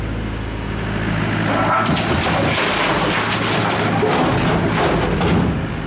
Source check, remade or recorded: recorded